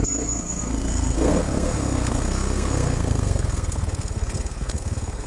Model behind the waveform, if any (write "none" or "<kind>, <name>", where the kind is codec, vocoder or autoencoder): codec, SNAC